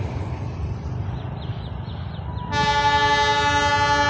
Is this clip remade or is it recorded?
recorded